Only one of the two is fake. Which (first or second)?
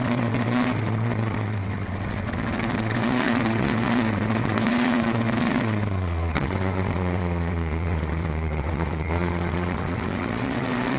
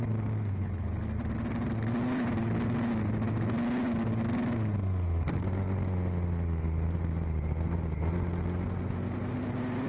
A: first